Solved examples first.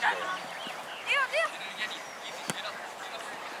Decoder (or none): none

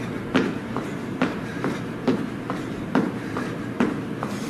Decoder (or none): vocoder, BigVGAN v2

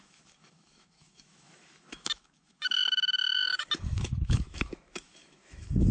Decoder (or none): autoencoder, DAC-VAE